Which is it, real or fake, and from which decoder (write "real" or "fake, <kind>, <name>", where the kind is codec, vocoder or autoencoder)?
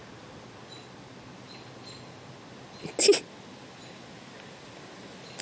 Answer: real